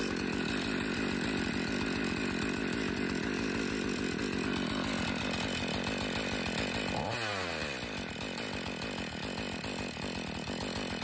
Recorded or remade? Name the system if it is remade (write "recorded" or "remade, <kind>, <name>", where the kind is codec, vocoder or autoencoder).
recorded